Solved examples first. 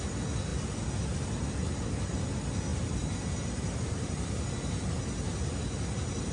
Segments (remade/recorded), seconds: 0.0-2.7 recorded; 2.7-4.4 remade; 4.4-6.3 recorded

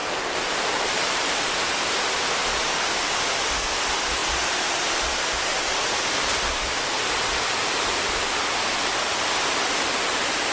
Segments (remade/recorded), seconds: 0.0-1.7 remade; 1.7-7.6 recorded; 7.6-8.2 remade; 8.2-10.5 recorded

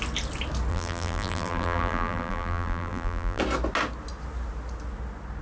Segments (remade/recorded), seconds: 0.0-0.7 recorded; 0.7-3.4 remade; 3.4-5.4 recorded